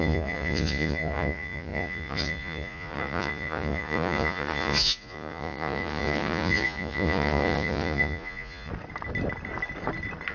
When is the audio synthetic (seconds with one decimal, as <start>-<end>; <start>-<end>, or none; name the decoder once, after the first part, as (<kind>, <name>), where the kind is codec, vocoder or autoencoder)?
0.0-8.7 (vocoder, Vocos)